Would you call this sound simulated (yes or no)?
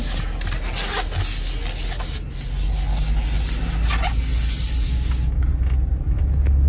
no